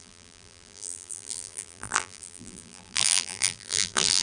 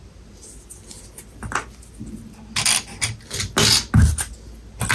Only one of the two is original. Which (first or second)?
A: second